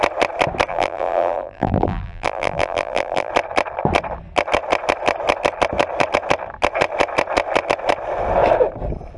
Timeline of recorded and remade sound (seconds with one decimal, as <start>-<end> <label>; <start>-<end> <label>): 0.0-0.7 recorded; 0.7-3.3 remade; 3.3-9.2 recorded